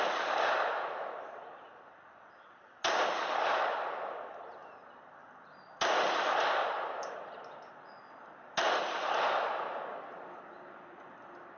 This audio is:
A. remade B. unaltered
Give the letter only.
B